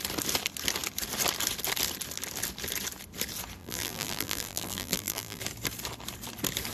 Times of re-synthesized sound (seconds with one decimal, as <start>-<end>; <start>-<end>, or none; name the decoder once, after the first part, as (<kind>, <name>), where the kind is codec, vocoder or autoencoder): 3.6-5.4 (vocoder, BigVGAN v2)